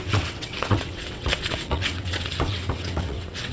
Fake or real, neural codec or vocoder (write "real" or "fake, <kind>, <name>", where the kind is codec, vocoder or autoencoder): fake, vocoder, WaveNeXt